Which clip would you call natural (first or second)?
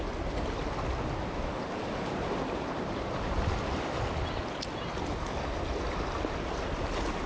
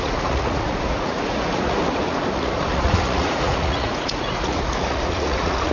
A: first